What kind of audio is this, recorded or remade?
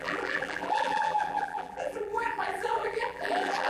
remade